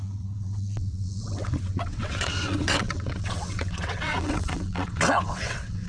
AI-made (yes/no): yes